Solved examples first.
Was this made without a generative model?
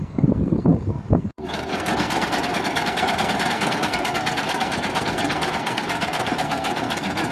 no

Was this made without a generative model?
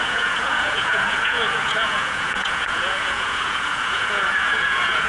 no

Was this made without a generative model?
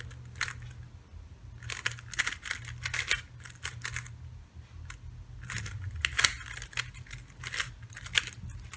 yes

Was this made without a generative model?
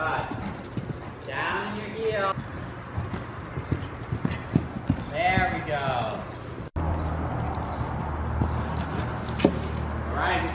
yes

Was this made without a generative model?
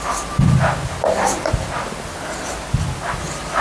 yes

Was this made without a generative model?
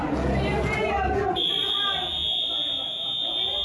yes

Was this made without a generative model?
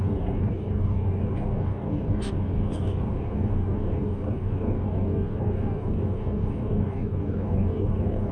no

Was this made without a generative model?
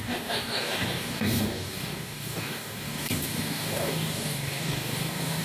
no